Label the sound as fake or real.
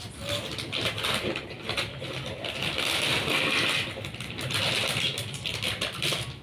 real